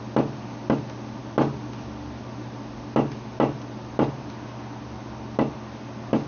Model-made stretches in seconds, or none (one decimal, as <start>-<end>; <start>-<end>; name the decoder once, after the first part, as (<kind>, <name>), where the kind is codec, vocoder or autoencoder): none